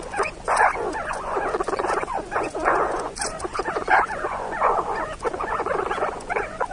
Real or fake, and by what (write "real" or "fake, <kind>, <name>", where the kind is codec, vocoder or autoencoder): fake, vocoder, Vocos